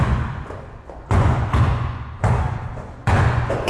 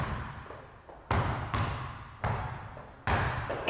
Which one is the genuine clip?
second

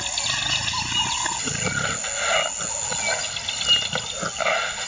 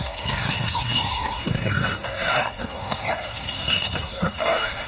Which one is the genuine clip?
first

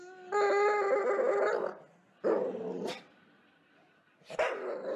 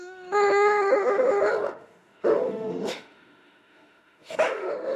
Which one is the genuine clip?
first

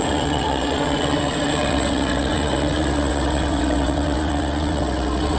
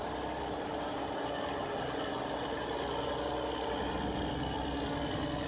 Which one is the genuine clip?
second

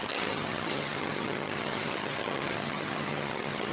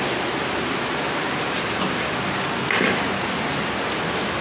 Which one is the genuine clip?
second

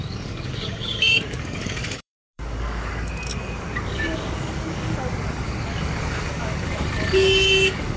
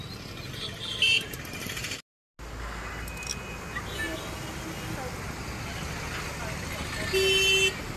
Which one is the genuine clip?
second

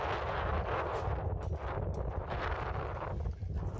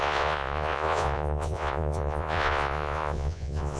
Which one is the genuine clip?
first